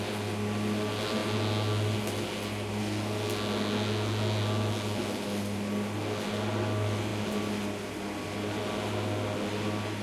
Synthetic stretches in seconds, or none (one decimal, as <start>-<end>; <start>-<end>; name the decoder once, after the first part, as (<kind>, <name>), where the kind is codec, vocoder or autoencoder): none